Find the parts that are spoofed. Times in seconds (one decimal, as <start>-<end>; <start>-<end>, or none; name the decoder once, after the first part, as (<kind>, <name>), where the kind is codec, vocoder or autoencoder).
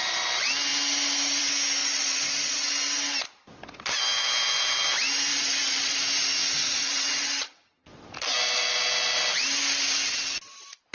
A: 1.8-2.7 (vocoder, Vocos); 5.3-6.0; 6.6-8.0